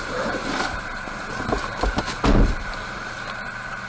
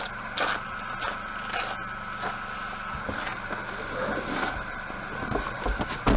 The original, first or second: second